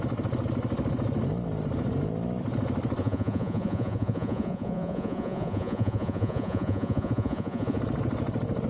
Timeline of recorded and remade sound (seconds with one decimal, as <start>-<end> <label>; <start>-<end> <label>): 0.0-3.0 recorded; 3.0-7.8 remade; 7.8-8.7 recorded